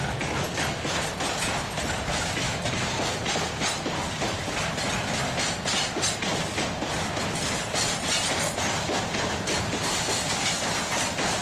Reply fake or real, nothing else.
real